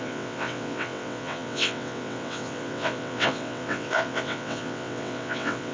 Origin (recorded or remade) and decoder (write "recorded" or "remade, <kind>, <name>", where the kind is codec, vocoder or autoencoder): remade, vocoder, WaveNeXt